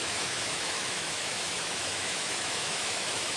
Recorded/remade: remade